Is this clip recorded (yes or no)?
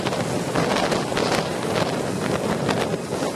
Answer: yes